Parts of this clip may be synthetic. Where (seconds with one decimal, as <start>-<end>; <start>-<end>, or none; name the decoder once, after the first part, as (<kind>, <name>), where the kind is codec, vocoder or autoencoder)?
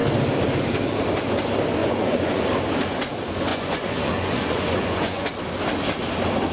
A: 1.8-2.4 (vocoder, Vocos); 3.5-5.3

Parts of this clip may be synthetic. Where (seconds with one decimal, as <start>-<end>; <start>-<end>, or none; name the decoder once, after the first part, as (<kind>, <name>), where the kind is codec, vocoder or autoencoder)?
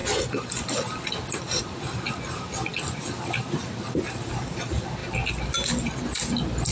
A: none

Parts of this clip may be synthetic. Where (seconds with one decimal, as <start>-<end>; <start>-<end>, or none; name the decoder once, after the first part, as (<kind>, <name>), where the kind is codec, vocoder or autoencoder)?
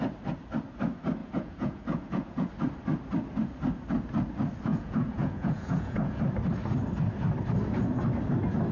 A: 1.2-2.5 (vocoder, Vocos); 4.7-6.2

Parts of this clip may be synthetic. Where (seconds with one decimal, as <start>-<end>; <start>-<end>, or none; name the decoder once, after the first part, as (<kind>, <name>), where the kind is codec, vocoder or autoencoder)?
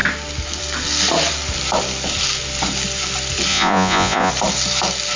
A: 3.5-4.3 (vocoder, Vocos)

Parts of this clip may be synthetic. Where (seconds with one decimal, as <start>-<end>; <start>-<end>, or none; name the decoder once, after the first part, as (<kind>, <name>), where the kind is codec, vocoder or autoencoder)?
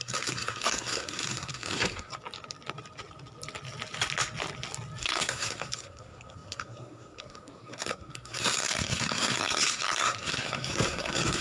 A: 0.0-2.1 (codec, SNAC); 5.0-11.4